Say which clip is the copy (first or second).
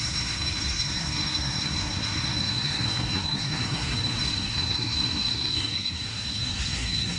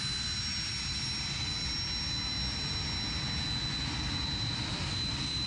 first